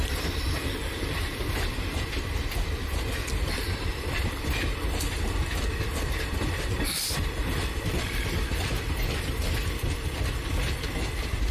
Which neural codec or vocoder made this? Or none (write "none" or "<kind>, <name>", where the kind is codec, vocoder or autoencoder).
vocoder, BigVGAN v2